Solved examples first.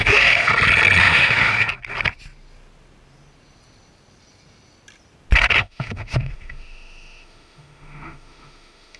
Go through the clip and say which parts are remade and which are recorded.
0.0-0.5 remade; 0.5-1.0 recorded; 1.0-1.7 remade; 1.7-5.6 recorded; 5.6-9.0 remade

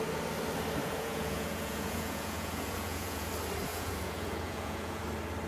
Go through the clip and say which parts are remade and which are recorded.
0.0-0.8 recorded; 0.8-3.3 remade; 3.3-3.7 recorded; 3.7-5.0 remade; 5.0-5.5 recorded

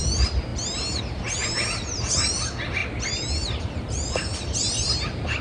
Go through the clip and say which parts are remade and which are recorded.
0.0-5.4 recorded

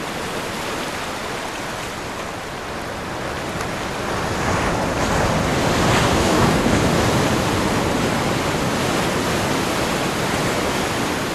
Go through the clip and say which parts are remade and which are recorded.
0.0-6.2 recorded; 6.2-6.8 remade; 6.8-11.3 recorded

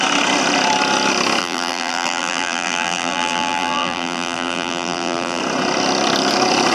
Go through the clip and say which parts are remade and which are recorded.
0.0-1.4 recorded; 1.4-5.4 remade; 5.4-6.7 recorded

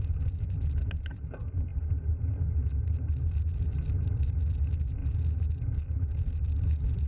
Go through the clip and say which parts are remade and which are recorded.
0.0-5.0 remade; 5.0-6.2 recorded; 6.2-7.1 remade

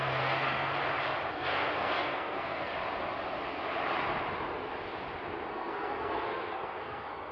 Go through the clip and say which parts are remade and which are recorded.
0.0-0.7 remade; 0.7-1.3 recorded; 1.3-2.7 remade; 2.7-5.5 recorded; 5.5-7.3 remade